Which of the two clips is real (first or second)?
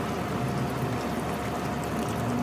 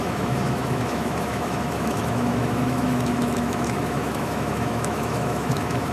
first